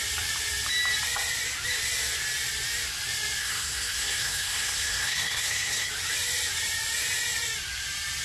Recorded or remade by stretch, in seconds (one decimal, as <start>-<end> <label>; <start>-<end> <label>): 0.0-3.4 recorded; 3.4-5.9 remade; 5.9-8.2 recorded